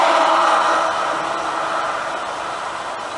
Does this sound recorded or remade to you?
recorded